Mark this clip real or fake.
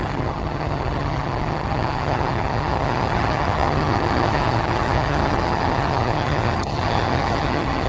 fake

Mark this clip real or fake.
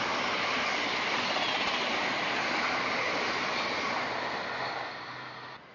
real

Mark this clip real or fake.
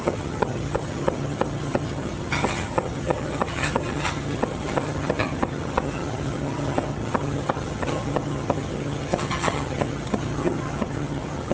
fake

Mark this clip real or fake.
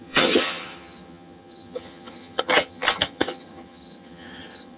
fake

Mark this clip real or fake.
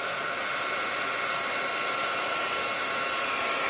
real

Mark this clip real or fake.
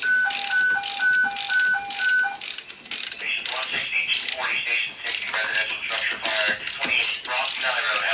real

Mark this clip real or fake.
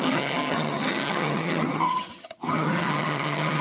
fake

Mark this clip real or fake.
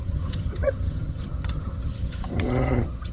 fake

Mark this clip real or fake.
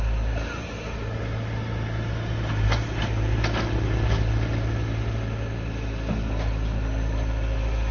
real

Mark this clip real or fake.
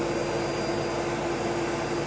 real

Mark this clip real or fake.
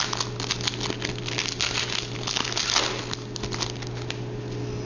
real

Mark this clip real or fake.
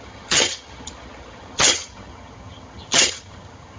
fake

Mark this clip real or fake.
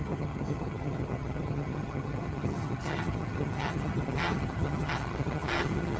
fake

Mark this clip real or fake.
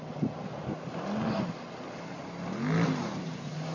real